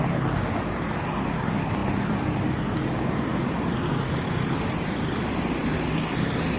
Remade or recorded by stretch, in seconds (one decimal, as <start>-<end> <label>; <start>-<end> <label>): 0.0-6.6 recorded